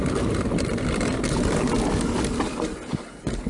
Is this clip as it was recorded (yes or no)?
yes